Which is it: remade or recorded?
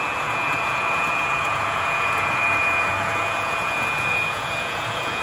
remade